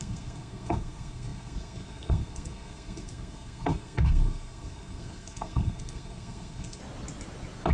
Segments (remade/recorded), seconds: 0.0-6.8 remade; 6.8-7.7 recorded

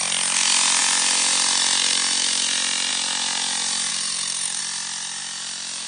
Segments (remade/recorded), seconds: 0.0-3.9 recorded; 3.9-4.6 remade; 4.6-5.9 recorded

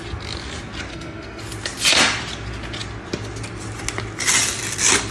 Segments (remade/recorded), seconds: 0.0-0.9 recorded; 0.9-1.4 remade; 1.4-5.1 recorded

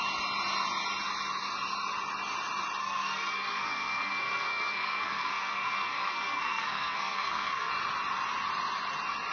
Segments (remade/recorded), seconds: 0.0-2.8 recorded; 2.8-7.7 remade; 7.7-9.3 recorded

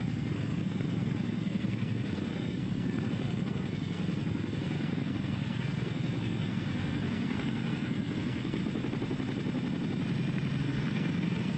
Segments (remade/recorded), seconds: 0.0-8.6 remade; 8.6-10.6 recorded; 10.6-11.6 remade

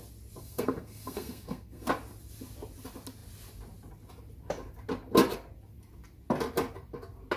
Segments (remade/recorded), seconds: 0.0-0.4 recorded; 0.4-1.9 remade; 1.9-7.4 recorded

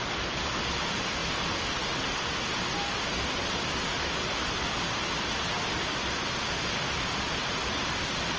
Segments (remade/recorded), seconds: 0.0-8.4 recorded